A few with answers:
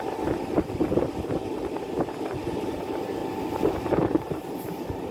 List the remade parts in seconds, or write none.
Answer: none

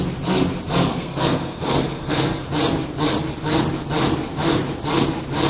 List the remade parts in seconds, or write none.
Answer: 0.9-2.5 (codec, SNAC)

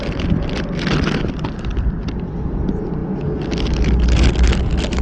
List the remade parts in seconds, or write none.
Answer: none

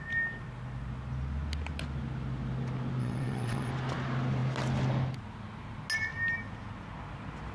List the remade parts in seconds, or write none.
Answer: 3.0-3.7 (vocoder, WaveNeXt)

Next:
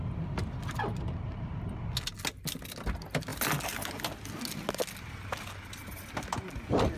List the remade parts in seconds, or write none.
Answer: none

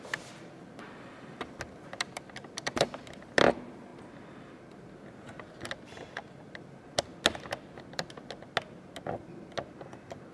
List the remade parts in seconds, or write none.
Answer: none

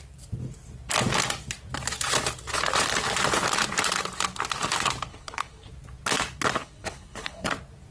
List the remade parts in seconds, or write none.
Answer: 5.1-5.7 (codec, HILCodec); 6.6-7.5